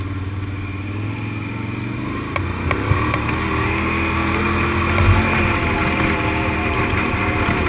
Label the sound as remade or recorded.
recorded